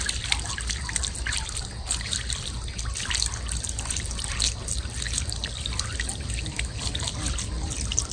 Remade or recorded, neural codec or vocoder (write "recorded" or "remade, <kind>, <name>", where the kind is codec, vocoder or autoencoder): recorded